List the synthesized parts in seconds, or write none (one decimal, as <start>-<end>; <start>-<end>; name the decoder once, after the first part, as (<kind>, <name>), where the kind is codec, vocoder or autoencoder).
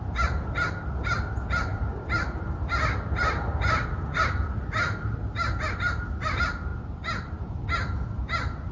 none